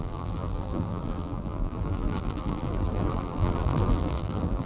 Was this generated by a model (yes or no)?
yes